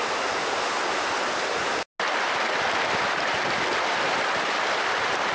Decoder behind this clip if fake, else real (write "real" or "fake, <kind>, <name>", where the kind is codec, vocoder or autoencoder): real